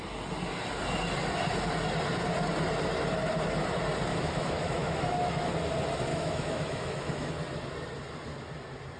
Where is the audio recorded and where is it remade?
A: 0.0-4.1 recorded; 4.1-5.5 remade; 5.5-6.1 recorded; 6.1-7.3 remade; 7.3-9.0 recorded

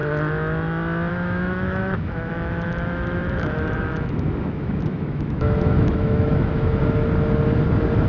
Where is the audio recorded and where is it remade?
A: 0.0-1.1 recorded; 1.1-6.8 remade; 6.8-8.1 recorded

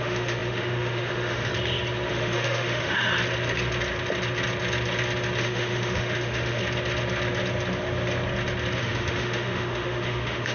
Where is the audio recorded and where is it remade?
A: 0.0-1.5 remade; 1.5-2.1 recorded; 2.1-3.1 remade; 3.1-5.4 recorded; 5.4-6.6 remade; 6.6-8.8 recorded; 8.8-10.5 remade

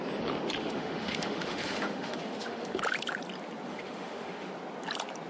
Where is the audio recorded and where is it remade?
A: 0.0-0.6 recorded; 0.6-2.8 remade; 2.8-3.7 recorded; 3.7-4.5 remade; 4.5-5.3 recorded